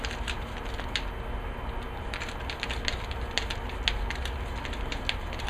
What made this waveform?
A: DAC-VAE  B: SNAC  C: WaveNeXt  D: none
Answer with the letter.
D